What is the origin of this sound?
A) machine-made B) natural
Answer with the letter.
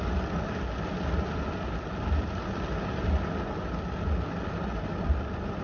B